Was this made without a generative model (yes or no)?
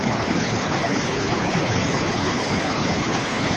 no